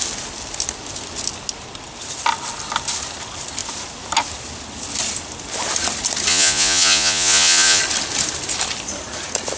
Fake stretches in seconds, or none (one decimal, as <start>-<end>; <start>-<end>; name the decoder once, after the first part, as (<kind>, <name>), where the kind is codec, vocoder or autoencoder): 6.3-7.8 (vocoder, Vocos)